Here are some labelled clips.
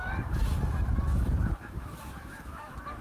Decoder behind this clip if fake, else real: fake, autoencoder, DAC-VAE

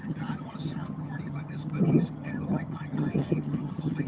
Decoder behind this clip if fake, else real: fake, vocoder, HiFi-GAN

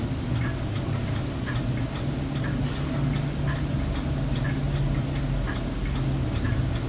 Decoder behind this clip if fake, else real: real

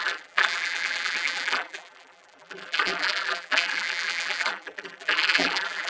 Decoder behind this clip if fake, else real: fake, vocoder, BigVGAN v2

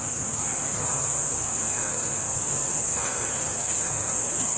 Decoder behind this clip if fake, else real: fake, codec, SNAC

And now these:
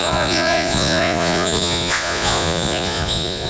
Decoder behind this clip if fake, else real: fake, vocoder, Vocos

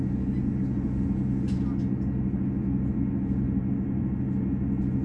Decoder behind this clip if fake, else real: real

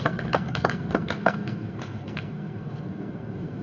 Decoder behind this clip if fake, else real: fake, codec, SNAC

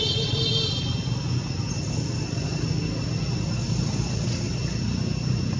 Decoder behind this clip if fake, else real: real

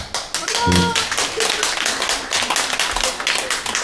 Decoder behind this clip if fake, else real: real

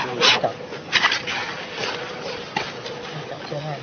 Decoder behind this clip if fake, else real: real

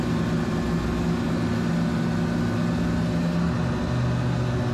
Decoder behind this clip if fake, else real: real